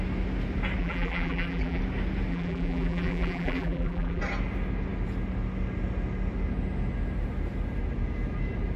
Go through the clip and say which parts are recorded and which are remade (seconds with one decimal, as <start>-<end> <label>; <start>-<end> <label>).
0.0-0.8 recorded; 0.8-1.8 remade; 1.8-2.3 recorded; 2.3-4.2 remade; 4.2-8.8 recorded